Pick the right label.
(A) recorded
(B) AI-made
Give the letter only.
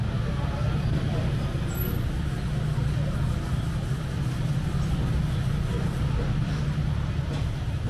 A